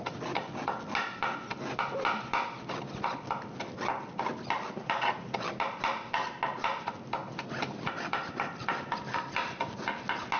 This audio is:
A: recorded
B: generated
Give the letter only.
A